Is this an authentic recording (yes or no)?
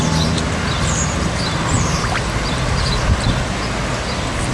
yes